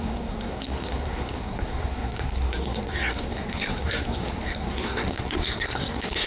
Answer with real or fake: fake